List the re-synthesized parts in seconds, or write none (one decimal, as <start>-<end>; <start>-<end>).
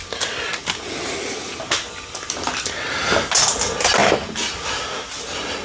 none